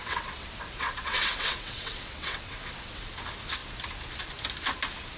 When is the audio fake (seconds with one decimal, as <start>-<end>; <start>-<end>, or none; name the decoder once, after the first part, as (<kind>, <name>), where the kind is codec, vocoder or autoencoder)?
0.0-3.1 (vocoder, WaveNeXt)